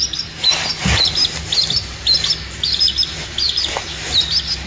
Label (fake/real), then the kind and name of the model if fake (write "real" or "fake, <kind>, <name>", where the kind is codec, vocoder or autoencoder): real